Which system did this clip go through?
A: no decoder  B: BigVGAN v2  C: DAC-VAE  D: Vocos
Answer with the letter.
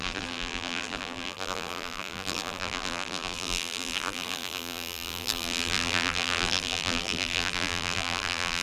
B